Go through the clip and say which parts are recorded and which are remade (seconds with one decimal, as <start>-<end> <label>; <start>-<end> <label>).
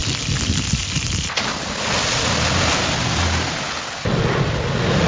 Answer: 0.0-5.1 recorded